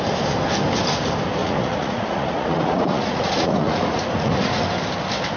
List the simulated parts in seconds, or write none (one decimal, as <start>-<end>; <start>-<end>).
1.4-4.6